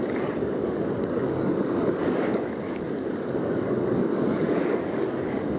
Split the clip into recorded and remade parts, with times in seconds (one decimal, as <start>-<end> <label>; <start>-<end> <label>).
0.0-5.6 remade